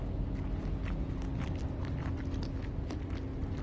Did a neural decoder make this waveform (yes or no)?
no